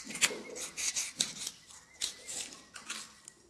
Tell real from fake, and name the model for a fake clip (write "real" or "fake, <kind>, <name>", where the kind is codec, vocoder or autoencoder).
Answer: real